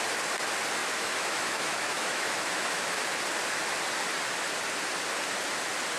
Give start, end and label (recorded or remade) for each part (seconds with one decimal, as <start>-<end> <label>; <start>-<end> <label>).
0.0-0.8 recorded; 0.8-3.0 remade; 3.0-6.0 recorded

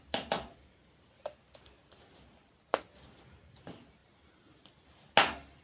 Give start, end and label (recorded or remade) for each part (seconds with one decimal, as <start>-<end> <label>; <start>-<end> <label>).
0.0-5.6 recorded

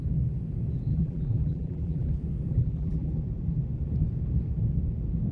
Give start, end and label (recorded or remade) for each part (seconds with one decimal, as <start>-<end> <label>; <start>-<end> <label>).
0.0-0.9 recorded; 0.9-2.1 remade; 2.1-2.5 recorded; 2.5-3.1 remade; 3.1-5.3 recorded

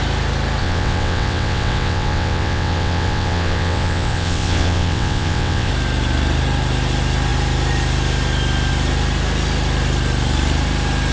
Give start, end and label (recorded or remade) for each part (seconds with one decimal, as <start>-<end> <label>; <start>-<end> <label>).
0.0-0.6 recorded; 0.6-5.7 remade; 5.7-11.1 recorded